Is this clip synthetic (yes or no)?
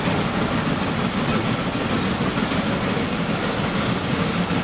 no